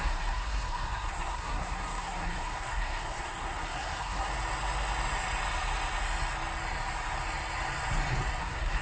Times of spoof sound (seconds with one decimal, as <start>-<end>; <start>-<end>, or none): 0.0-4.3; 8.4-8.8